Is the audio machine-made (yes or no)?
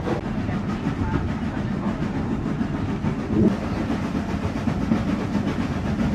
no